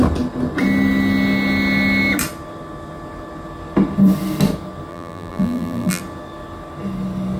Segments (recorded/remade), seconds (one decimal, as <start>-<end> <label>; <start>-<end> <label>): 0.0-4.9 recorded; 4.9-6.0 remade; 6.0-7.4 recorded